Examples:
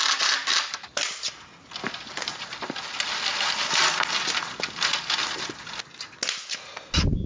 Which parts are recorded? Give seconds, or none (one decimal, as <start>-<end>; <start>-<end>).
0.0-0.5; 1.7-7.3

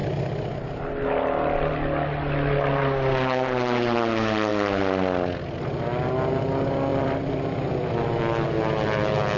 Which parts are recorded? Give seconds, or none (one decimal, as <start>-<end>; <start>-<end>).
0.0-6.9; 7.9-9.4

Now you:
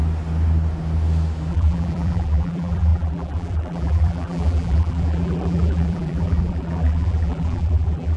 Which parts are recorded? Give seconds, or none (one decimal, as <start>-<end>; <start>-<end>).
0.0-1.5

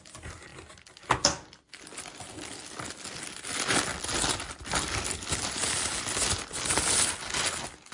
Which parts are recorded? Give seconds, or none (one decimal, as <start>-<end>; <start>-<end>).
0.0-7.9